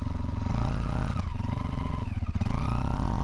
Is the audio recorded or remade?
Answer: remade